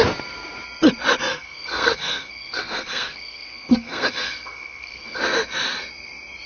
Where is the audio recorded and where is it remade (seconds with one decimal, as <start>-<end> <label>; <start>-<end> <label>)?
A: 0.0-1.3 recorded; 1.3-5.2 remade; 5.2-6.5 recorded